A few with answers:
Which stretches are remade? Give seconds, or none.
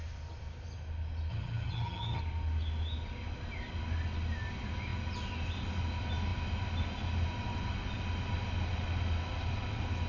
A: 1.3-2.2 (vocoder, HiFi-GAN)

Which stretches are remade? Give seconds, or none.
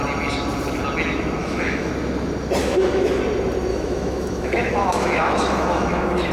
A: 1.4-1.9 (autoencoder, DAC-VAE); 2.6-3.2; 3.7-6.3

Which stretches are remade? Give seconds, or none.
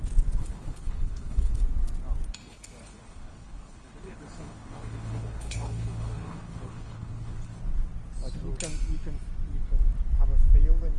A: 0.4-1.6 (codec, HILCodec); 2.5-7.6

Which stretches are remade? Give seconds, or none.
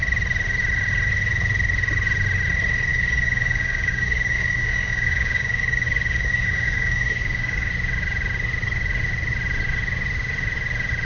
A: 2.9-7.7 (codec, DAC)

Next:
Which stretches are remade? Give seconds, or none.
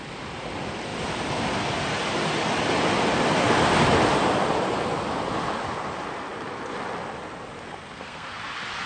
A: 7.7-8.4 (codec, SNAC)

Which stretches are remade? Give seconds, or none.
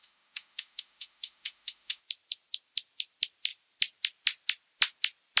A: 0.0-2.0 (autoencoder, DAC-VAE)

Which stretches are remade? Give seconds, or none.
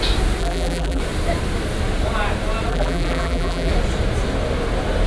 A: 0.4-1.0 (vocoder, BigVGAN v2); 2.7-3.7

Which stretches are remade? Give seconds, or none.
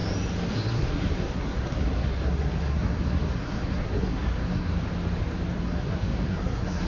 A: 0.5-4.7 (codec, SNAC); 5.6-6.9